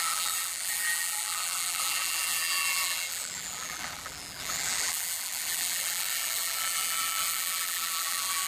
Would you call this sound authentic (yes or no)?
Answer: no